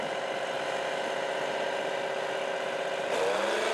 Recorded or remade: recorded